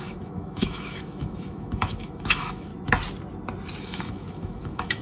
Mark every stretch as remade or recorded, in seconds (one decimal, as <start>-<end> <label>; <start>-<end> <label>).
0.0-2.7 remade; 2.7-3.8 recorded; 3.8-5.0 remade